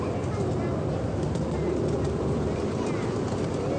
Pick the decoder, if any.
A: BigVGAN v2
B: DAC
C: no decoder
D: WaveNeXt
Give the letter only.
C